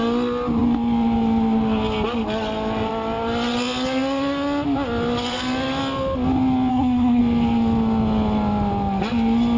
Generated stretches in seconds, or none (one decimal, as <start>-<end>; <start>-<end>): 6.7-7.2